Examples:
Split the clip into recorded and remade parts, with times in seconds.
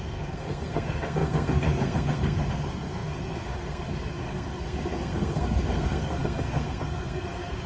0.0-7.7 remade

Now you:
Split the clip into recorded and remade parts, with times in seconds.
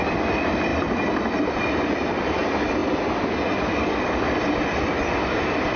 0.0-5.8 recorded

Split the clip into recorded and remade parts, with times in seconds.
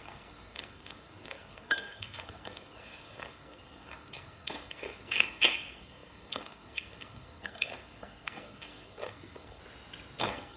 0.0-9.6 remade; 9.6-10.2 recorded; 10.2-10.6 remade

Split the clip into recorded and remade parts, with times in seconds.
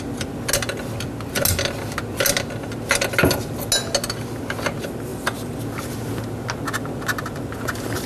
0.0-8.1 recorded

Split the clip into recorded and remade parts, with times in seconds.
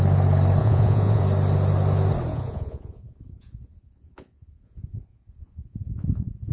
0.0-0.6 recorded; 0.6-1.2 remade; 1.2-2.3 recorded; 2.3-6.5 remade